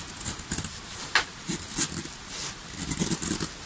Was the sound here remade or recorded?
recorded